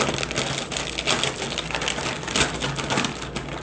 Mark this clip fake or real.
real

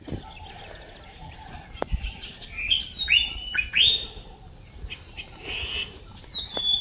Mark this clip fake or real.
fake